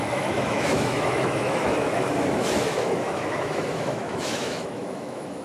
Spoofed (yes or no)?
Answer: yes